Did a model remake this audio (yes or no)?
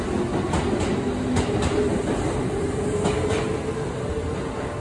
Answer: no